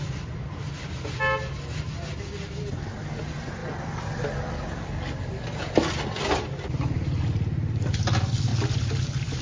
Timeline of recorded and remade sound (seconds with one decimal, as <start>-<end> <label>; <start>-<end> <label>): 0.0-0.6 remade; 0.6-2.7 recorded; 2.7-9.4 remade